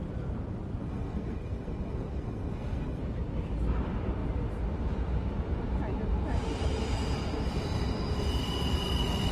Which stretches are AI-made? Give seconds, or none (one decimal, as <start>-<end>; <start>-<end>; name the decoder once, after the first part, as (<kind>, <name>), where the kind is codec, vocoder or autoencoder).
0.8-3.0 (codec, SNAC)

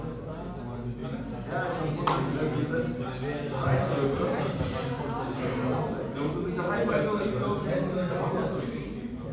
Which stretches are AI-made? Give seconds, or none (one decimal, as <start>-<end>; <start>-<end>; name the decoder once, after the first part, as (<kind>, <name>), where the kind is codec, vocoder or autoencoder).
none

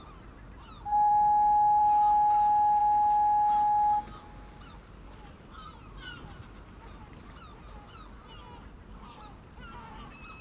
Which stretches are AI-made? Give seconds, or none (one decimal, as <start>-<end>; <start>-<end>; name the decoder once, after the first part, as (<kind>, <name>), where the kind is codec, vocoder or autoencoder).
none

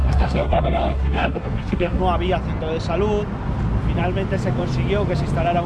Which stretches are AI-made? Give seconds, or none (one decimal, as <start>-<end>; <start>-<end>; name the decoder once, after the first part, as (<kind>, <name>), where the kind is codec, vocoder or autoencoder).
0.0-2.0 (codec, SNAC)

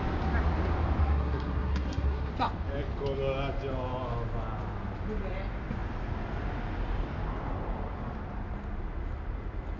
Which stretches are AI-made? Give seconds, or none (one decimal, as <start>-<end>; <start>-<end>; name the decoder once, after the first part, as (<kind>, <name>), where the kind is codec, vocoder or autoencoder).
1.0-2.3 (codec, SNAC)

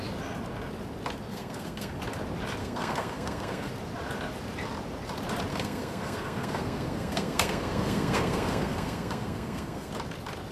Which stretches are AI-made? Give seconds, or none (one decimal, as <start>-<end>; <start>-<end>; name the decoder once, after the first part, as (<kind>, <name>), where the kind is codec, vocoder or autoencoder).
1.3-2.0 (codec, SNAC); 2.6-3.7; 5.5-9.9

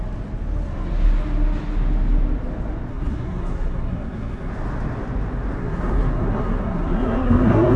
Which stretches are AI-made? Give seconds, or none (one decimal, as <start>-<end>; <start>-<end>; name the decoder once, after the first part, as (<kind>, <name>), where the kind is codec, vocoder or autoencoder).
2.9-4.5 (codec, SNAC); 5.6-7.8

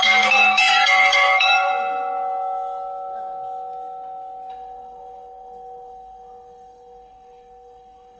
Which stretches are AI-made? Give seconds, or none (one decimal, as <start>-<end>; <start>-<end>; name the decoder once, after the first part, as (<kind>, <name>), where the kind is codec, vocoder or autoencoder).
0.0-1.7 (codec, SNAC); 4.5-8.2